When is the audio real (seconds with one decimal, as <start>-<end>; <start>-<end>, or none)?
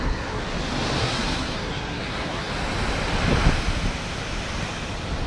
0.4-1.0; 2.5-5.3